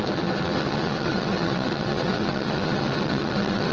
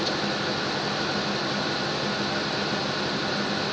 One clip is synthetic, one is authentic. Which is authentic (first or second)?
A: second